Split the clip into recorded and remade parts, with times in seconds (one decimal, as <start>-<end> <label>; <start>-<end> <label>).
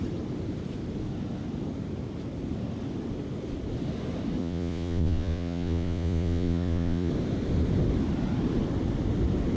0.0-4.4 recorded; 4.4-7.1 remade; 7.1-9.6 recorded